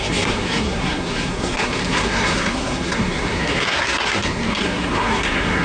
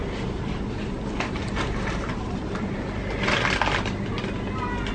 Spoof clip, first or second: first